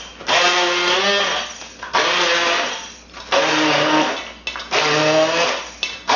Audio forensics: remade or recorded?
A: recorded